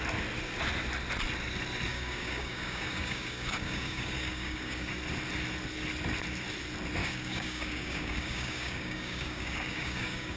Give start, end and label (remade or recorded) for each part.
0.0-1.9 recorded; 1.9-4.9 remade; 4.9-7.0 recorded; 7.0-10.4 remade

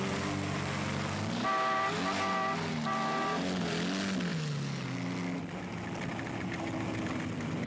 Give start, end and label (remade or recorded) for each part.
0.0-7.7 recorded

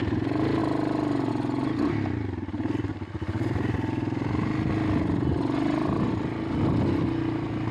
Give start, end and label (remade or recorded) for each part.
0.0-7.7 recorded

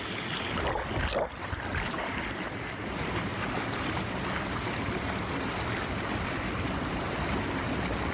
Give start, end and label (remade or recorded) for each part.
0.0-8.1 recorded